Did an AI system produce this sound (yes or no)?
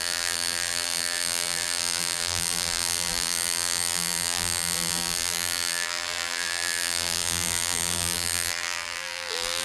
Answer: yes